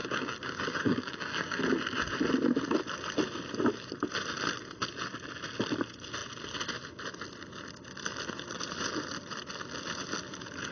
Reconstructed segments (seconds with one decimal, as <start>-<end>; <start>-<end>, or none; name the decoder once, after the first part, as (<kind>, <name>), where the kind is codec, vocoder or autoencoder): 0.0-1.6 (codec, DAC)